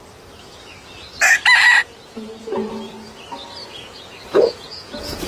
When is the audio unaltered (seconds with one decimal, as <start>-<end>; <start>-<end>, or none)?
0.0-1.8; 2.7-3.6